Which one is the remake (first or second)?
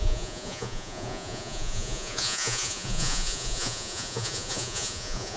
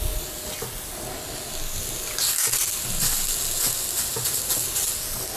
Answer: first